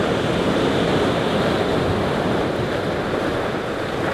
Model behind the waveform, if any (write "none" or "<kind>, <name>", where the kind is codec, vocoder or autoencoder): none